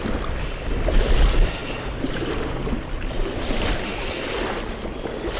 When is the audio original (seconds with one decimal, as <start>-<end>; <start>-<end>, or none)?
0.0-1.6; 2.7-5.4